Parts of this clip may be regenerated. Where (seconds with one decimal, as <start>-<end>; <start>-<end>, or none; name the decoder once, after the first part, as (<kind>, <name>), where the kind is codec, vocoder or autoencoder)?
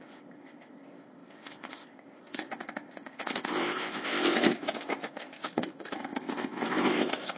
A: 0.0-7.4 (codec, ZipCodec)